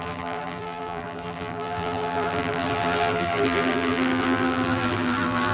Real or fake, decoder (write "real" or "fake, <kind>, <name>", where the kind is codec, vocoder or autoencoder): fake, vocoder, BigVGAN v2